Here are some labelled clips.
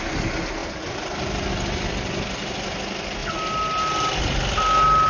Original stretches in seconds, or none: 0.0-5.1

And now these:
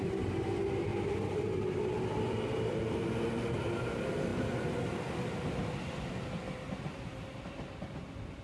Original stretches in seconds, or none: 0.0-0.9; 1.8-8.4

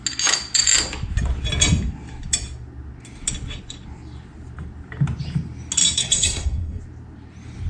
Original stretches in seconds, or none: 0.0-6.0; 6.8-7.7